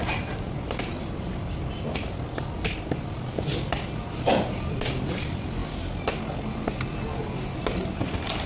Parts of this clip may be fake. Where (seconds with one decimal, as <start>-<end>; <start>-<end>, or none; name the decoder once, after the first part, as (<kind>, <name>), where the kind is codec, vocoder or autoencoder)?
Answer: 0.0-0.9 (vocoder, BigVGAN v2); 4.3-5.6; 7.9-8.5